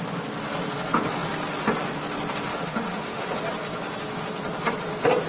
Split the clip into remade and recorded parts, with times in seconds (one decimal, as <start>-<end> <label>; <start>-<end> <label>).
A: 0.0-2.5 recorded; 2.5-3.3 remade; 3.3-5.3 recorded